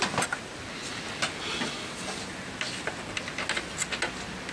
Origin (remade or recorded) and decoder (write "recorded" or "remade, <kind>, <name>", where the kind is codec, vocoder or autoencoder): recorded